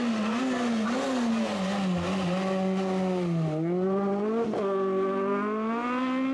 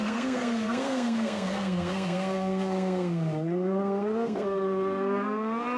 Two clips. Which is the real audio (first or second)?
first